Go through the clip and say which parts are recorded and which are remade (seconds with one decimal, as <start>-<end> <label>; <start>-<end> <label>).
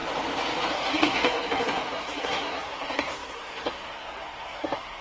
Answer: 0.0-0.7 recorded; 0.7-5.0 remade